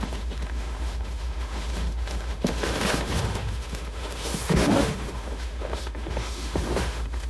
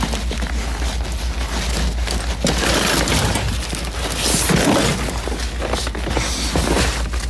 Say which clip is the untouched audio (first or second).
second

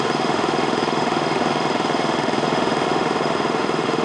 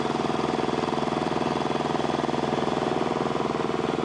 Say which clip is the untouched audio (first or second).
second